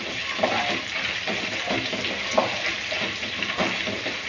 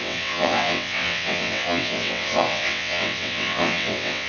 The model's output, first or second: second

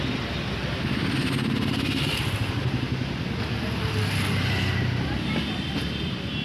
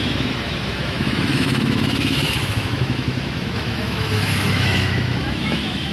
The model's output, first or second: second